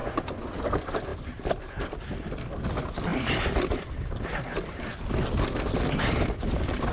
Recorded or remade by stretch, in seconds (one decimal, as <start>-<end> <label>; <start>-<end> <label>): 0.0-0.6 remade; 0.6-6.9 recorded